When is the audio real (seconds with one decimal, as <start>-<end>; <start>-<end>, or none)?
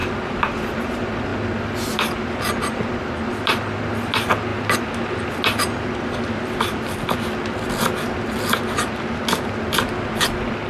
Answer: 0.0-10.7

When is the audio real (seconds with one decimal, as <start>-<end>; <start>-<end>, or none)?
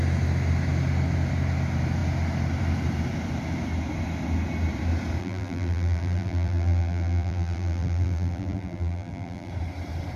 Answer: 0.0-5.2; 9.5-10.2